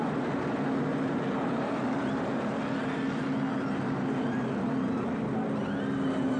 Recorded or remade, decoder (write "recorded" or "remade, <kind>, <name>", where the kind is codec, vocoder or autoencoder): recorded